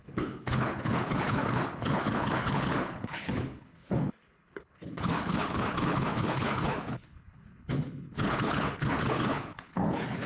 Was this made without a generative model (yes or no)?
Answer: no